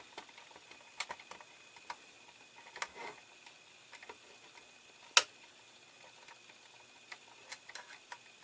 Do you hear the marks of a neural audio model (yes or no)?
no